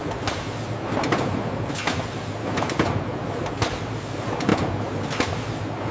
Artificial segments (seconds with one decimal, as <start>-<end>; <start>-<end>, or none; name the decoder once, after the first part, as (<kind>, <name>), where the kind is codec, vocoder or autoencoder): none